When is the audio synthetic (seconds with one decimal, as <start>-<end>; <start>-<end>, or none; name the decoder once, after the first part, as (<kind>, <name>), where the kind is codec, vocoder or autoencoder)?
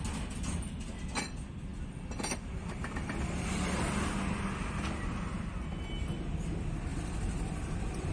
6.9-8.1 (vocoder, BigVGAN v2)